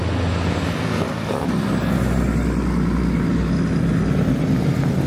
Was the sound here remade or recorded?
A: recorded